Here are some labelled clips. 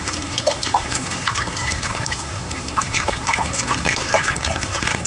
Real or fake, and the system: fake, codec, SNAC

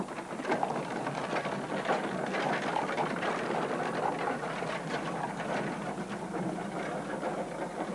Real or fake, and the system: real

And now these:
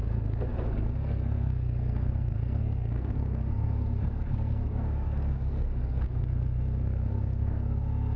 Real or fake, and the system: fake, codec, SNAC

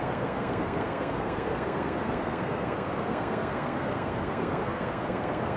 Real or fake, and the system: fake, codec, SNAC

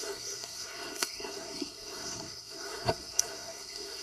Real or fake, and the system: fake, codec, SNAC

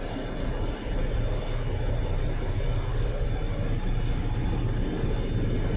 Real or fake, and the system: real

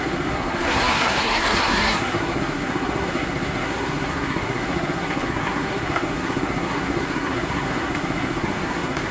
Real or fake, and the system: fake, codec, SNAC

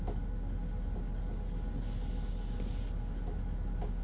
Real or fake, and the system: real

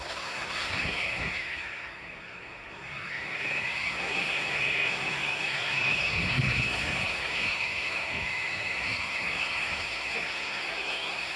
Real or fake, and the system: fake, codec, SNAC